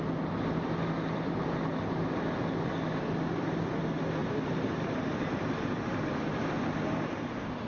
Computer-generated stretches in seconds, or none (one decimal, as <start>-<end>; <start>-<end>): 4.2-5.8